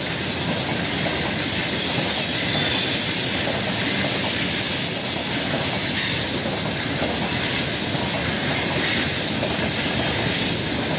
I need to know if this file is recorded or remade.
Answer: recorded